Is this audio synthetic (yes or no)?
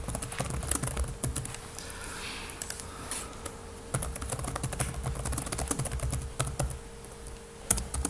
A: no